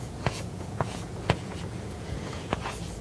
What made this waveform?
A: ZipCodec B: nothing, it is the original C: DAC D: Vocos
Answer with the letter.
D